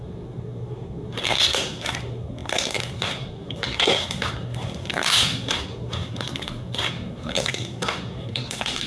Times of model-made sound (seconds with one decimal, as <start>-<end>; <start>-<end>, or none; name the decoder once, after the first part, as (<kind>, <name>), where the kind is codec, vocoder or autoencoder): 0.0-8.9 (codec, SNAC)